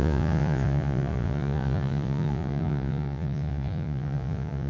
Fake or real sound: fake